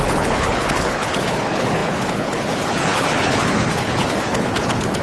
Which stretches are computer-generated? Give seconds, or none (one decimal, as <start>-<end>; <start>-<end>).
0.0-5.0